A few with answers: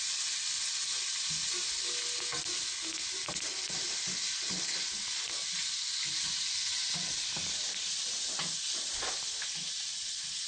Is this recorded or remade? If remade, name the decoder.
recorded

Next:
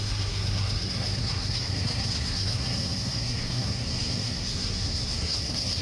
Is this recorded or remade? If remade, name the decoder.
remade, codec, SNAC